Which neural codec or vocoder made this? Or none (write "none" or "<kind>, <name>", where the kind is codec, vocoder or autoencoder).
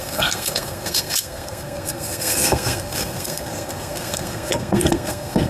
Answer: codec, SNAC